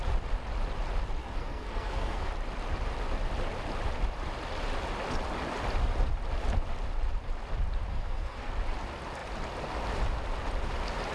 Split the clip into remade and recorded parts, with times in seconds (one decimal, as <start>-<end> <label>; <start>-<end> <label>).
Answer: 0.0-1.2 recorded; 1.2-2.3 remade; 2.3-7.9 recorded; 7.9-8.5 remade; 8.5-11.1 recorded